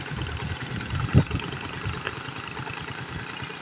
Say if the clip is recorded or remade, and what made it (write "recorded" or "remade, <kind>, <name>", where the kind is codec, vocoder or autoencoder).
recorded